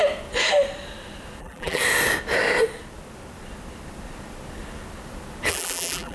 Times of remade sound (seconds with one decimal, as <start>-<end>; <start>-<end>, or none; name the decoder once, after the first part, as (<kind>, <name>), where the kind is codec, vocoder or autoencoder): 1.4-1.8 (vocoder, BigVGAN v2); 5.5-6.1